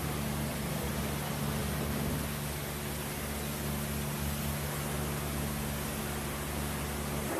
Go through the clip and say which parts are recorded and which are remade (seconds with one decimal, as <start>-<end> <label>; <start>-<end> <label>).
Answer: 0.0-0.9 remade; 0.9-7.4 recorded